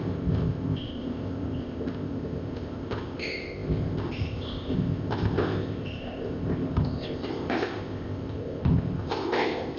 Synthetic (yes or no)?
yes